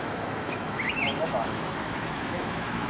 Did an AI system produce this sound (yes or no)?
yes